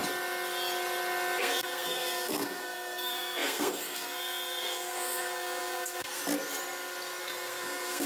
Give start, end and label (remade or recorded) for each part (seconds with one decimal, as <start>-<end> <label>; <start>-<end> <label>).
0.0-1.4 recorded; 1.4-6.2 remade; 6.2-7.2 recorded; 7.2-8.1 remade